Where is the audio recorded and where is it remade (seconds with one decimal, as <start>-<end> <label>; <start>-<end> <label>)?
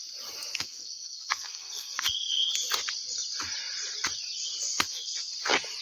0.0-0.5 recorded; 0.5-2.5 remade; 2.5-4.7 recorded; 4.7-5.3 remade; 5.3-5.8 recorded